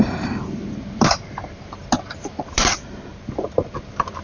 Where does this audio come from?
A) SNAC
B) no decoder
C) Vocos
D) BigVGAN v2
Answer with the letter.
D